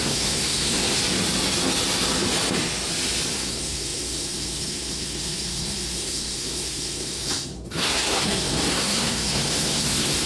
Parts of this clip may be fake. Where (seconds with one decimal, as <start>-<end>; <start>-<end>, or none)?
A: 0.0-1.0; 3.3-10.3

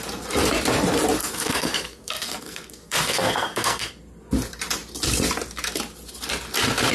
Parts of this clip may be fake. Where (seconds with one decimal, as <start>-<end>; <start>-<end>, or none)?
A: 1.2-3.9